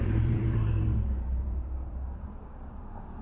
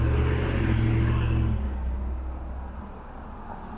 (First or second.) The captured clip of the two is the second